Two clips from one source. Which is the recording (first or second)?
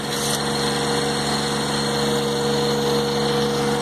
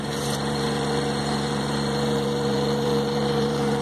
first